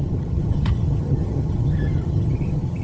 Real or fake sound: fake